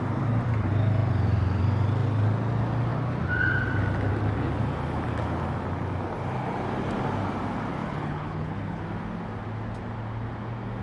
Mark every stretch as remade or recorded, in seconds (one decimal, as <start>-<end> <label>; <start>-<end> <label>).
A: 0.0-7.8 recorded; 7.8-8.8 remade; 8.8-10.8 recorded